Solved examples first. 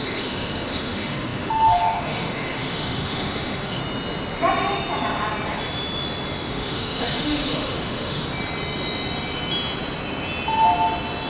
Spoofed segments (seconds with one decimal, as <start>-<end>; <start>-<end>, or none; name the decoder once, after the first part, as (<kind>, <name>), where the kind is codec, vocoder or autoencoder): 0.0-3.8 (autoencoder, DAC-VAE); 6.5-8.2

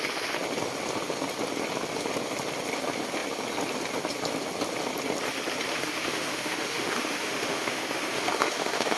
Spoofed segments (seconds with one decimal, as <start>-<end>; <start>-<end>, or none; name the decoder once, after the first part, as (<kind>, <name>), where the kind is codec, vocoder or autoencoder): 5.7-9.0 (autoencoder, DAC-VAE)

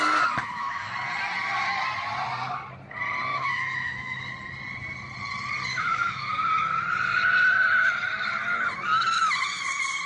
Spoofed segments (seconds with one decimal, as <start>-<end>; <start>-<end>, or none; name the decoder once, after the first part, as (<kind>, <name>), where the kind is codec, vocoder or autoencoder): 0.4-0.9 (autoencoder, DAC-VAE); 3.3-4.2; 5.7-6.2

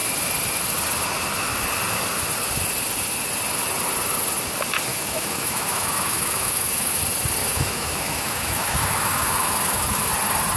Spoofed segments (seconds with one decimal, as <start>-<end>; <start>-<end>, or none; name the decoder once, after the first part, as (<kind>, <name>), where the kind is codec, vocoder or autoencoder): 4.9-7.0 (autoencoder, DAC-VAE); 7.4-10.1

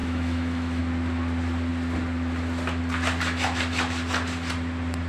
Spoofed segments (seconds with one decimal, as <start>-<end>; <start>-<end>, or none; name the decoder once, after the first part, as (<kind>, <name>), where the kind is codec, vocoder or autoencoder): 0.0-0.8 (autoencoder, DAC-VAE)